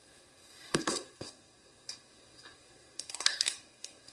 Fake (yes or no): yes